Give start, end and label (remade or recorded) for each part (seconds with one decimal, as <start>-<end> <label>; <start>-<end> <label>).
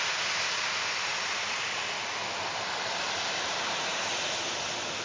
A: 0.0-5.0 recorded